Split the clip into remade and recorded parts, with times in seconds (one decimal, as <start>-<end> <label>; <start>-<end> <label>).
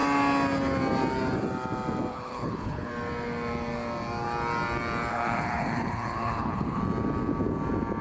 0.0-2.1 recorded; 2.1-2.9 remade; 2.9-5.1 recorded; 5.1-6.8 remade; 6.8-8.0 recorded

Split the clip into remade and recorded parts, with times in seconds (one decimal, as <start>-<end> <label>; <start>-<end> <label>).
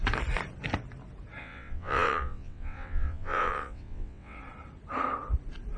0.0-1.4 recorded; 1.4-4.4 remade; 4.4-5.8 recorded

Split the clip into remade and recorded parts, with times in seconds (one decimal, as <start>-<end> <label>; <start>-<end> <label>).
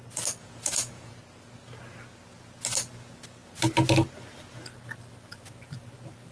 0.0-0.4 recorded; 0.4-1.2 remade; 1.2-6.3 recorded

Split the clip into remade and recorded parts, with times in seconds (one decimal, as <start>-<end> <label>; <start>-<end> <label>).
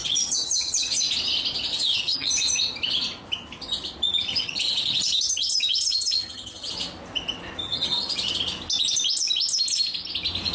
0.0-1.0 remade; 1.0-1.7 recorded; 1.7-2.3 remade; 2.3-4.3 recorded; 4.3-6.7 remade; 6.7-7.6 recorded; 7.6-8.3 remade; 8.3-10.5 recorded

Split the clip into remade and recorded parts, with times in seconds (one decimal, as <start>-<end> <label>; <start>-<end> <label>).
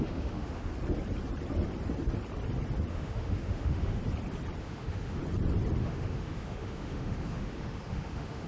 0.0-0.7 remade; 0.7-2.9 recorded; 2.9-4.0 remade; 4.0-4.6 recorded; 4.6-5.2 remade; 5.2-5.8 recorded; 5.8-8.5 remade